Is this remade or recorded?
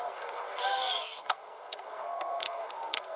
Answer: remade